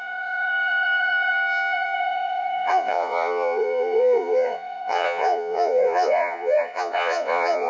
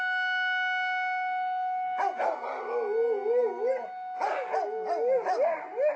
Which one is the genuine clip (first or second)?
second